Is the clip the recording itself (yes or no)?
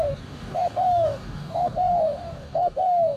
no